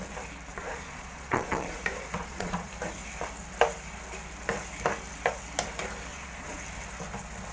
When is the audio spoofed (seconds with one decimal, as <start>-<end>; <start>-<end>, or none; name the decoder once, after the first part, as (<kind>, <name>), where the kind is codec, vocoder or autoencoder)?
0.5-2.7 (vocoder, Vocos); 6.1-6.6